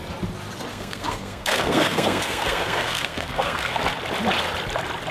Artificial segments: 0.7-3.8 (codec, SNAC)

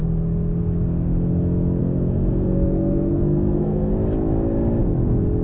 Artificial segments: 1.8-3.9 (codec, SNAC)

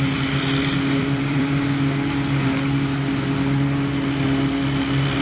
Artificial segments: 1.0-1.6 (vocoder, BigVGAN v2)

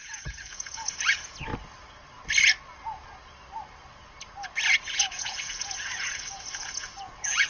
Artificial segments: 0.0-1.5 (vocoder, Vocos); 4.8-7.5

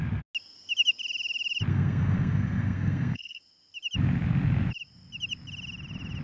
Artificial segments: 1.7-3.4 (codec, SNAC)

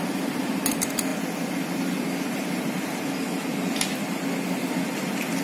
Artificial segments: none

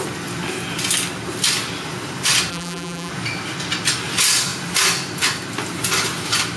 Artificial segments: 2.5-3.1 (vocoder, BigVGAN v2)

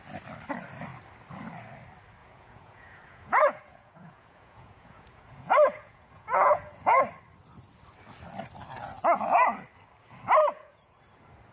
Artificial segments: 2.2-7.0 (vocoder, Vocos); 10.4-11.0